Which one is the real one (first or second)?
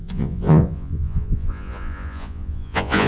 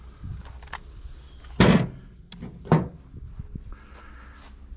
second